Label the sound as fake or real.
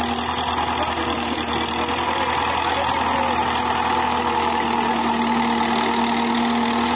real